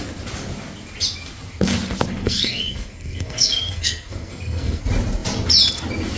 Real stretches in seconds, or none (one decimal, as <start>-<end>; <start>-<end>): 0.0-2.2; 4.8-6.2